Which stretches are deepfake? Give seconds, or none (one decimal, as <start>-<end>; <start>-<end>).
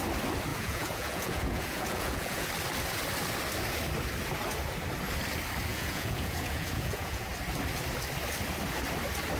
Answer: 0.5-2.5; 5.7-7.3